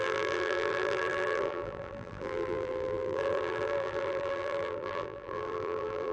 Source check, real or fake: fake